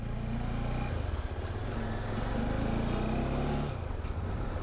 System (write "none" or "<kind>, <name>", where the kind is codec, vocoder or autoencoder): none